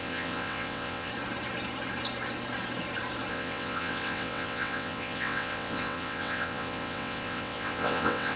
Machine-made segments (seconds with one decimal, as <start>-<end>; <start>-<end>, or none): 0.0-1.1; 3.3-8.4

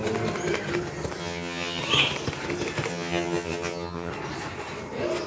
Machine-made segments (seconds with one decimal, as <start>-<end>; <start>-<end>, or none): 1.2-1.8; 2.9-4.1

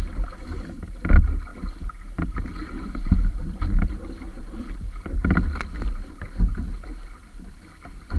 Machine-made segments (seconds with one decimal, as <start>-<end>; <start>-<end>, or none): none

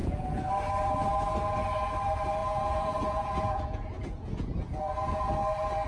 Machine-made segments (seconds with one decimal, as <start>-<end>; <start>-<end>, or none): 0.0-0.5; 2.4-5.3

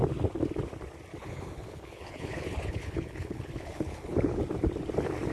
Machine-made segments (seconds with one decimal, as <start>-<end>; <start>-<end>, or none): 1.2-4.4

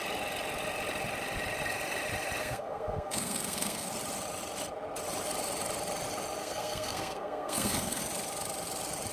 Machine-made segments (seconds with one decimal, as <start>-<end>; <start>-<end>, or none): 2.4-3.9; 6.4-8.0

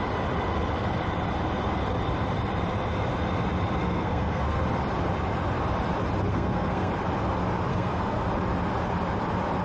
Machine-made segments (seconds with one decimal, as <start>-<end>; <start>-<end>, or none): 3.8-4.6; 6.3-6.9; 7.7-8.3

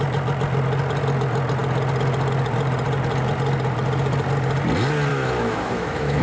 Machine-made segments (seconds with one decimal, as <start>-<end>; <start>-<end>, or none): 5.1-6.2